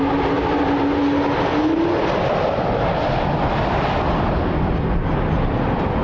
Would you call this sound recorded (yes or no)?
yes